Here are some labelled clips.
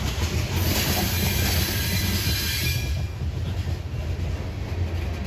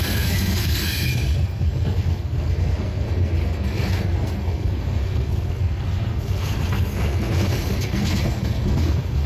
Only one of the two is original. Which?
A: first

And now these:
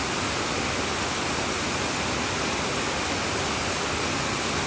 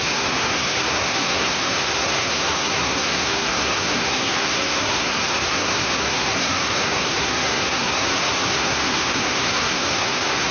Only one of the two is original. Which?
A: first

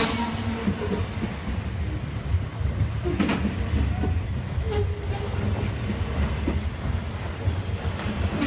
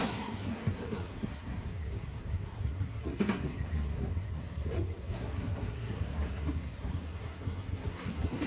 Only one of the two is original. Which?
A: first